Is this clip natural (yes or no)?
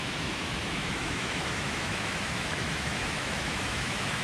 no